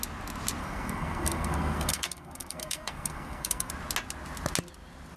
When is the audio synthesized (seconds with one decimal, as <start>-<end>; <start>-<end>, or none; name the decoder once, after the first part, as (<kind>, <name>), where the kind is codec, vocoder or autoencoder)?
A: 0.6-3.7 (codec, SNAC)